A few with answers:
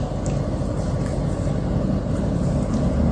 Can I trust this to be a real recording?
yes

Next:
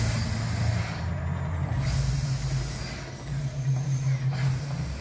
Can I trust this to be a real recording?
yes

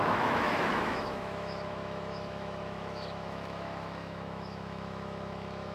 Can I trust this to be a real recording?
no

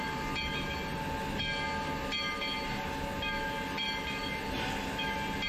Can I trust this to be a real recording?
yes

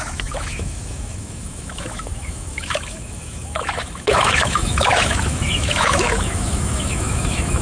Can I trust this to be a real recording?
no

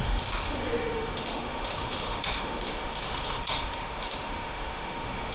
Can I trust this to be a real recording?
no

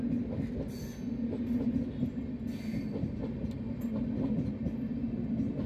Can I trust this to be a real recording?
yes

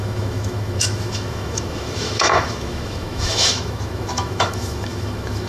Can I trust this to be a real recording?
no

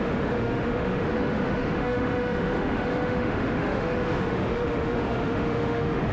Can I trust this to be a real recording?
no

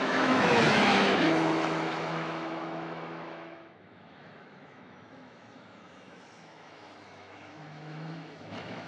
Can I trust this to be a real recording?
no